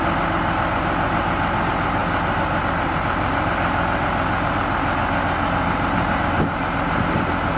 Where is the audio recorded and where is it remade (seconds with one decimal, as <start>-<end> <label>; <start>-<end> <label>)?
0.0-7.6 recorded